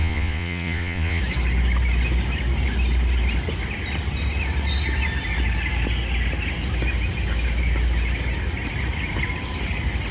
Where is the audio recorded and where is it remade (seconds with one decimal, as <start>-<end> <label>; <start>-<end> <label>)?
0.0-1.2 remade; 1.2-10.1 recorded